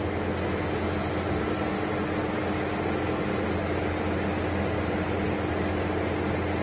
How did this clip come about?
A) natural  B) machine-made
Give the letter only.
A